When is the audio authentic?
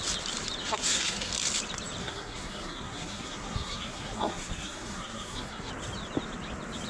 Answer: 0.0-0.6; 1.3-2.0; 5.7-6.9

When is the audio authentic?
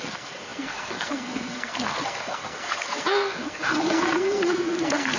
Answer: none